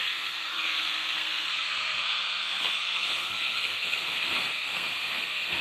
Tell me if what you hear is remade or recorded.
remade